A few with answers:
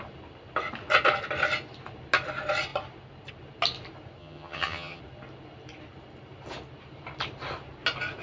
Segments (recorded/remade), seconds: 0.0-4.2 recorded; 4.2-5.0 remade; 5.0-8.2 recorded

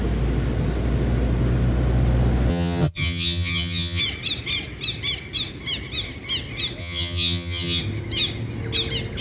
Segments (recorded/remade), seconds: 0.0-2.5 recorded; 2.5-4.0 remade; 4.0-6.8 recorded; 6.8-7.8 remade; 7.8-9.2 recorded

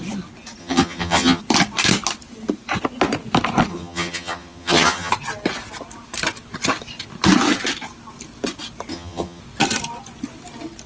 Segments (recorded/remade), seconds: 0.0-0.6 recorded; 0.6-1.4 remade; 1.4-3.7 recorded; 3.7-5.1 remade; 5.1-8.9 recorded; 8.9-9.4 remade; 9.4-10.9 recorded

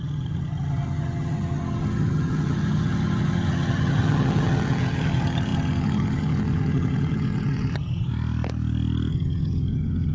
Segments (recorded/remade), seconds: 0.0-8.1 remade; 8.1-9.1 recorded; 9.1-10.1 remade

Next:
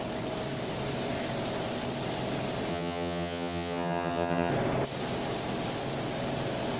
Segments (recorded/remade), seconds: 0.0-2.7 recorded; 2.7-4.5 remade; 4.5-6.8 recorded

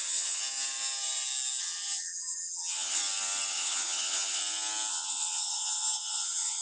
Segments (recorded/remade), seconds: 0.0-0.4 remade; 0.4-1.6 recorded; 1.6-3.0 remade; 3.0-3.5 recorded; 3.5-4.4 remade; 4.4-4.9 recorded; 4.9-6.6 remade

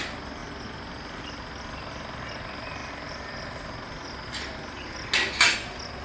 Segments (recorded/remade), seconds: 0.0-6.0 recorded

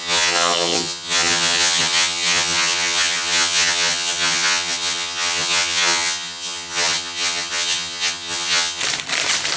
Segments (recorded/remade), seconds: 0.0-8.8 remade; 8.8-9.6 recorded